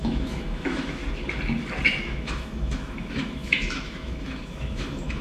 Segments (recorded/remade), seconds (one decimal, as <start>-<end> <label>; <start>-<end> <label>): 0.0-1.0 remade; 1.0-2.0 recorded; 2.0-5.2 remade